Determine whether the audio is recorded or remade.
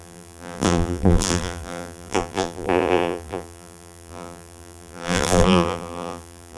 remade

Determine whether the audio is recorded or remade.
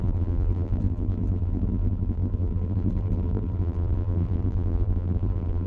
remade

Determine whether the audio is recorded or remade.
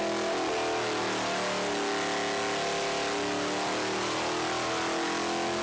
recorded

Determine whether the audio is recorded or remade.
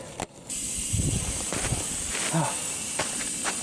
recorded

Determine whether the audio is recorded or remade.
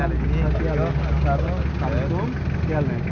recorded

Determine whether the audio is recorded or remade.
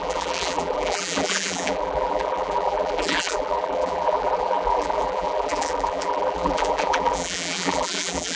remade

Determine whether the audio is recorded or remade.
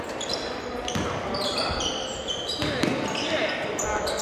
remade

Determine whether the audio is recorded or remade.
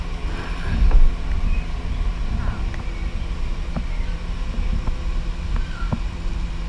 recorded